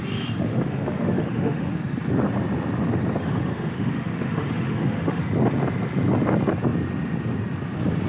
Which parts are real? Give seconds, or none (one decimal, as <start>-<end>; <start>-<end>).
0.0-0.5; 1.7-3.2; 5.2-8.1